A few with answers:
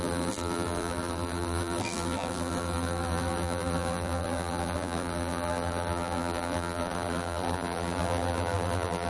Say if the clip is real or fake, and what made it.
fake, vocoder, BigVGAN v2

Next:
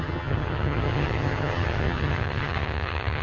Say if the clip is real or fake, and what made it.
fake, vocoder, HiFi-GAN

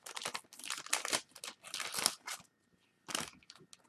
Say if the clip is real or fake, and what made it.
real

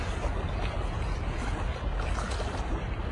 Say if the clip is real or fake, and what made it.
real